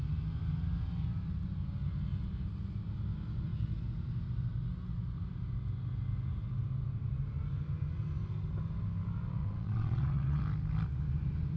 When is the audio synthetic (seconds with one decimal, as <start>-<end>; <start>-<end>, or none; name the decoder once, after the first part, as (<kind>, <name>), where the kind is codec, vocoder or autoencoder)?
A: 9.4-10.4 (vocoder, WaveNeXt)